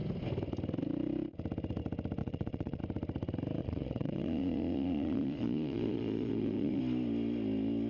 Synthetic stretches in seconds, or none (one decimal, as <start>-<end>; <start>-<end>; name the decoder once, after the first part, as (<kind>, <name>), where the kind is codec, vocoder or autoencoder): 2.2-2.8 (vocoder, Vocos); 3.6-6.8